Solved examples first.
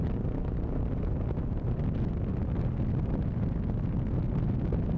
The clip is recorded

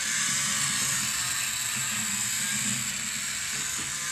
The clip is recorded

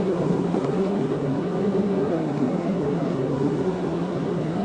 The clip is remade